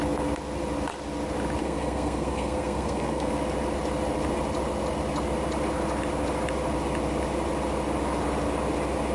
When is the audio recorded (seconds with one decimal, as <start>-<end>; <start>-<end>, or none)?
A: 0.0-1.6; 3.3-9.1